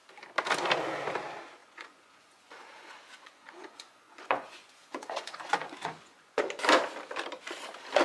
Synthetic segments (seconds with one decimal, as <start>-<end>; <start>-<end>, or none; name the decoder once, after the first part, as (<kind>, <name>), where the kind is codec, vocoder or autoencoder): 1.6-6.4 (vocoder, Vocos)